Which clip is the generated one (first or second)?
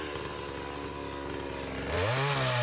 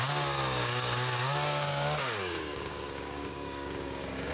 second